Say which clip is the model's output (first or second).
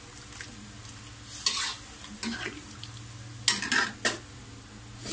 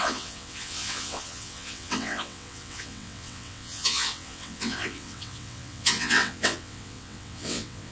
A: second